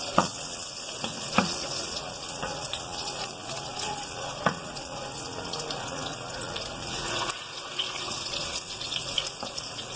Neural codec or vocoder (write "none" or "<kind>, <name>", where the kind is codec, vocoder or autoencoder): vocoder, Vocos